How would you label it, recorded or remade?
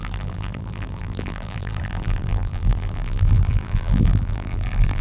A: remade